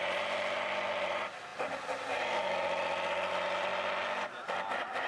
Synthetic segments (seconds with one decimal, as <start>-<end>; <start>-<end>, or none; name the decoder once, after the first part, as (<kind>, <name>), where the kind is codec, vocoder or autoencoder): 0.0-1.5 (vocoder, BigVGAN v2); 3.3-3.7; 4.2-5.1